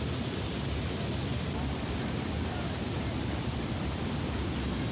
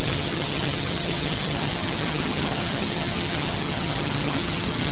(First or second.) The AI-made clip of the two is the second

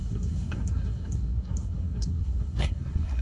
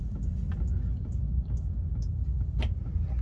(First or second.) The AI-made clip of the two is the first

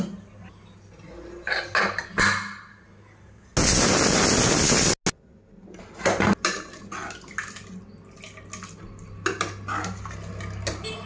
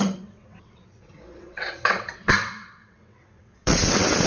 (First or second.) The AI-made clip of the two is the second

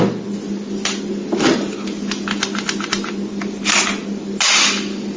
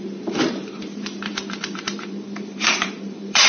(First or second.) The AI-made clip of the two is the second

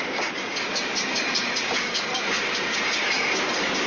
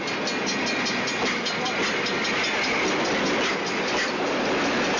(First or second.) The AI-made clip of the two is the first